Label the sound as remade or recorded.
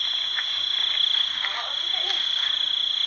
recorded